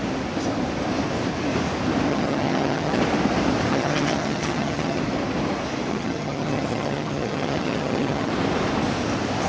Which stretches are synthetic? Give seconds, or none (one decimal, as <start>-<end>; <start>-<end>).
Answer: 2.1-3.0; 3.7-5.0; 5.9-8.3